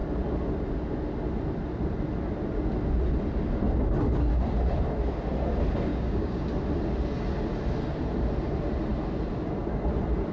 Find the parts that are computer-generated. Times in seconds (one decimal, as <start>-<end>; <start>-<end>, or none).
5.9-6.4